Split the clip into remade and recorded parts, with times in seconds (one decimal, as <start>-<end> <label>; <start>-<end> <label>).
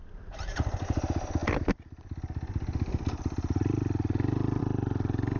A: 0.0-5.4 recorded